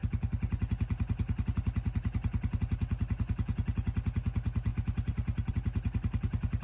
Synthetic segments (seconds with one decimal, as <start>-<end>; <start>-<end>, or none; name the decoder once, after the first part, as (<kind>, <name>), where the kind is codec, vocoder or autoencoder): none